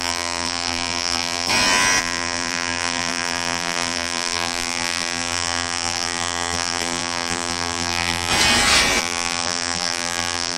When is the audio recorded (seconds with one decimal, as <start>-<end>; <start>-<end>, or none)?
1.5-2.0; 8.3-9.0